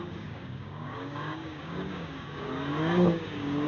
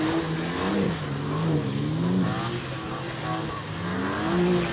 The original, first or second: second